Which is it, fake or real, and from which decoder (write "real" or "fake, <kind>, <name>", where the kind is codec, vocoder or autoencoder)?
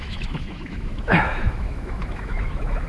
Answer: fake, autoencoder, DAC-VAE